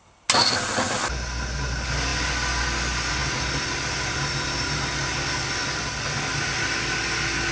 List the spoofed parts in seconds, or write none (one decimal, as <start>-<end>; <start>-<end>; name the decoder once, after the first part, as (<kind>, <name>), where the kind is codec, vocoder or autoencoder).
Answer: none